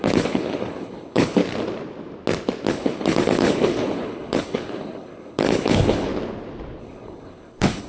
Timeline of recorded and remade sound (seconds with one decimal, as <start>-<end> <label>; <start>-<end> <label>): 0.0-1.4 remade; 1.4-2.7 recorded; 2.7-6.1 remade; 6.1-6.8 recorded; 6.8-7.9 remade